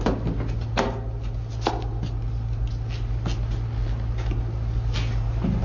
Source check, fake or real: real